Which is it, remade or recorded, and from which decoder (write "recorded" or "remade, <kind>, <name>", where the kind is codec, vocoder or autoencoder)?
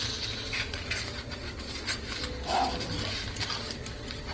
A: recorded